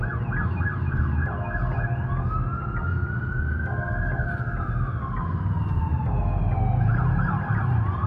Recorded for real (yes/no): yes